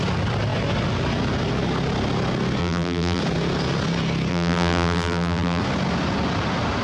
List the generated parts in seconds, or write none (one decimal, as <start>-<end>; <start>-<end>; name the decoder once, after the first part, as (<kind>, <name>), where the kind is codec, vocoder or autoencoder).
2.6-3.2 (vocoder, BigVGAN v2); 4.3-5.6